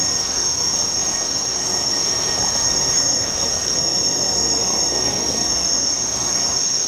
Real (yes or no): no